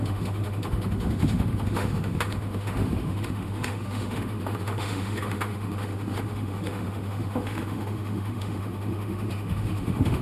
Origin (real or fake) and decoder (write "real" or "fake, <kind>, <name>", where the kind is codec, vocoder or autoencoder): fake, autoencoder, DAC-VAE